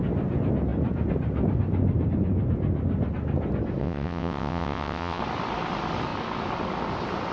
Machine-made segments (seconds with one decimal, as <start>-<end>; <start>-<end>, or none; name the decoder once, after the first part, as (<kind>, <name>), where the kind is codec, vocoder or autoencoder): 3.8-5.2 (vocoder, WaveNeXt)